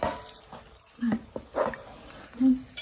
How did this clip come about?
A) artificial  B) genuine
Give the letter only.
B